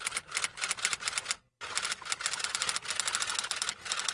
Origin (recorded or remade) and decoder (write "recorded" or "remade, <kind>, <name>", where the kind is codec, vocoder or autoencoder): recorded